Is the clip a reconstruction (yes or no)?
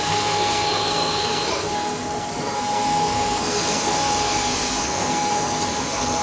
yes